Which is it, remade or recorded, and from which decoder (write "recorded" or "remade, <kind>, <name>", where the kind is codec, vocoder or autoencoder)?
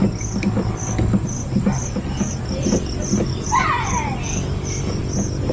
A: recorded